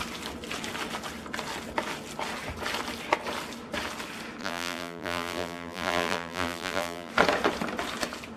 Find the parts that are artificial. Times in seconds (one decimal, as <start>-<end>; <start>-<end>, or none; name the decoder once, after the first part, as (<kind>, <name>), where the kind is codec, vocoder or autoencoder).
4.4-7.1 (vocoder, BigVGAN v2)